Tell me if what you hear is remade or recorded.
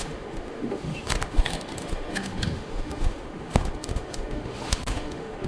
remade